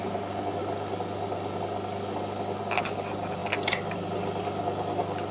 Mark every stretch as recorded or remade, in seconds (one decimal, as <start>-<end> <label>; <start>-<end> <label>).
0.0-5.3 recorded